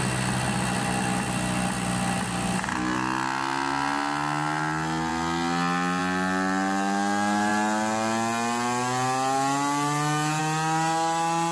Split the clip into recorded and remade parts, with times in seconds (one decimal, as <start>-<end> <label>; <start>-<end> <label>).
0.0-11.5 recorded